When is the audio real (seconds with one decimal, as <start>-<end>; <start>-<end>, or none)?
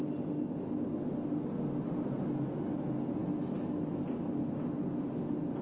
0.0-3.2; 4.0-5.6